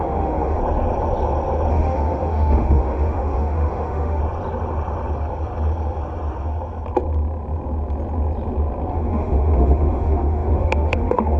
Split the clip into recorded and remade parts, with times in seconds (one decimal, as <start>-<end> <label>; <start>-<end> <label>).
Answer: 0.0-0.6 remade; 0.6-1.7 recorded; 1.7-4.2 remade; 4.2-8.9 recorded; 8.9-11.4 remade